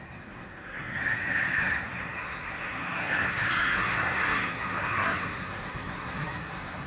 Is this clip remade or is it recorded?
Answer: remade